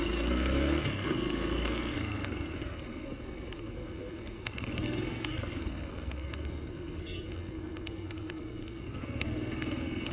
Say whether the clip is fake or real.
fake